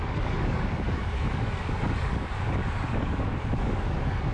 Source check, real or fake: fake